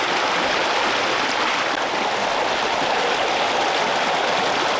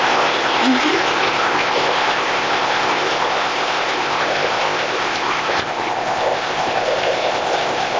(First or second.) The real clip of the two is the first